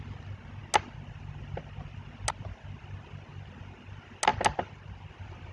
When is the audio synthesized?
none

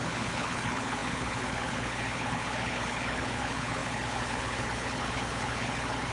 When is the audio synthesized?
0.0-6.1 (codec, HILCodec)